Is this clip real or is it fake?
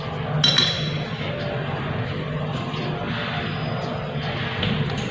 real